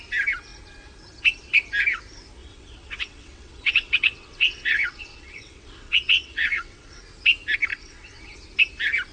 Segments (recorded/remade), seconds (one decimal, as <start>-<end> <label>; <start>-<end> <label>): 0.0-2.4 recorded; 2.4-7.0 remade; 7.0-7.7 recorded; 7.7-8.2 remade; 8.2-9.1 recorded